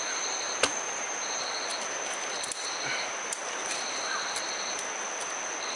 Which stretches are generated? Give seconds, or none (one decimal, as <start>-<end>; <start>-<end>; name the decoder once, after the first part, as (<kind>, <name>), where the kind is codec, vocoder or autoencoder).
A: none